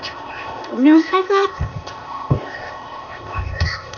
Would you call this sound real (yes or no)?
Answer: no